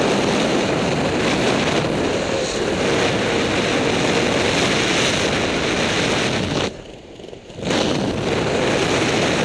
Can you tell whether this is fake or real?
real